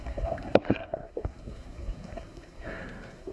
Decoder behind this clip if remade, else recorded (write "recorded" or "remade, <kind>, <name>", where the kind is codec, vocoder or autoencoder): remade, codec, SNAC